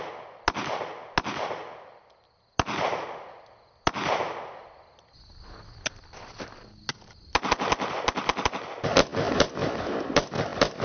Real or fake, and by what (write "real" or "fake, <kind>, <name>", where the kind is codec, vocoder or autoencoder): real